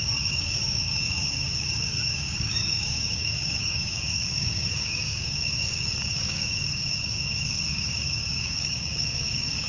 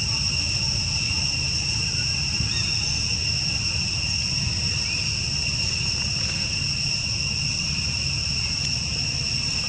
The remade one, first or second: first